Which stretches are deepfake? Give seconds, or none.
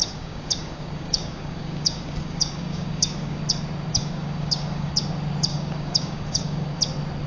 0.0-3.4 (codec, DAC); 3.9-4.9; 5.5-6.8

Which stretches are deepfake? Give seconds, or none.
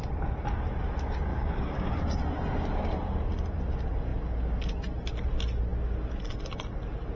1.3-2.0 (codec, DAC)